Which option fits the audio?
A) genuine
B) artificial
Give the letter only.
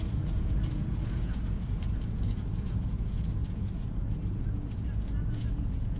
B